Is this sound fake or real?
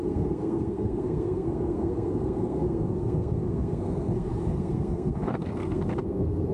fake